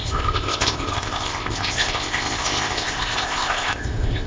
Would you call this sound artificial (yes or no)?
yes